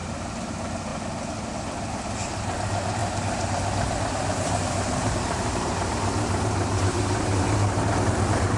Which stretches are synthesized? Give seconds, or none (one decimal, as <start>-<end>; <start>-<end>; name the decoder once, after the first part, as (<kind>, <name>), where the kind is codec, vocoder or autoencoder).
3.0-3.6 (vocoder, BigVGAN v2); 4.3-8.1